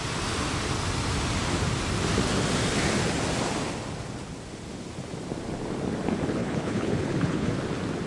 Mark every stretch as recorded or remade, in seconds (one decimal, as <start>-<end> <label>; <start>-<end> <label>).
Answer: 0.0-6.4 recorded; 6.4-7.5 remade; 7.5-8.1 recorded